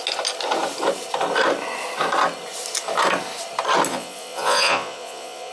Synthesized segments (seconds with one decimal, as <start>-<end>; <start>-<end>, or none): 3.9-5.5